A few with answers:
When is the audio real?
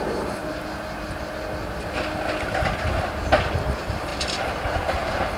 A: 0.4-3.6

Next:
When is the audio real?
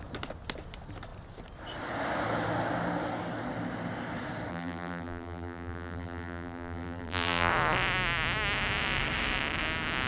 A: 0.0-4.5; 7.5-10.1